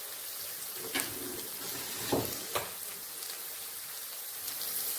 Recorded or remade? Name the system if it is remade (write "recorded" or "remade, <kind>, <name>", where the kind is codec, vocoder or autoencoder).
recorded